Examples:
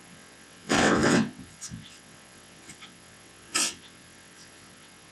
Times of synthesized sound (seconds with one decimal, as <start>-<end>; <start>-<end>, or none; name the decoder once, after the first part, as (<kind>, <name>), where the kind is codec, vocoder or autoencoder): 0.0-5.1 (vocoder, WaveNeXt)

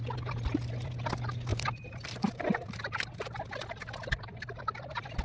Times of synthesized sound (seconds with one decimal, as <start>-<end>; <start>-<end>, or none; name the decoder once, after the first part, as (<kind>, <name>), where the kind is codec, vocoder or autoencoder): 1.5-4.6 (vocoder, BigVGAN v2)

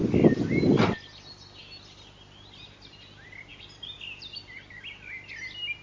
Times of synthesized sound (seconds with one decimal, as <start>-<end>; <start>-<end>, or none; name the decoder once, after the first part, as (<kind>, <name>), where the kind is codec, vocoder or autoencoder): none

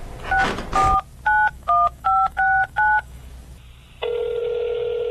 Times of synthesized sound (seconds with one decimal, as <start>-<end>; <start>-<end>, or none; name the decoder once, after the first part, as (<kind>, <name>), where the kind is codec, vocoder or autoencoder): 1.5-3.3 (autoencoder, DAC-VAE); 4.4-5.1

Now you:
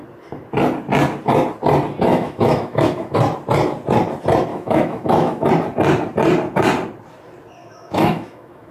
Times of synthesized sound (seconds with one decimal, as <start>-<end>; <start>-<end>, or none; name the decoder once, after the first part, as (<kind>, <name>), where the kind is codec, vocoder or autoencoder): 2.1-3.2 (autoencoder, DAC-VAE); 4.5-5.5; 7.6-8.7

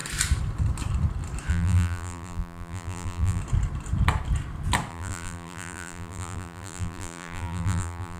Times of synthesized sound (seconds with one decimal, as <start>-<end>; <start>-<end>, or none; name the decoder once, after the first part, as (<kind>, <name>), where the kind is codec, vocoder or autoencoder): 1.5-3.4 (vocoder, BigVGAN v2); 4.9-8.2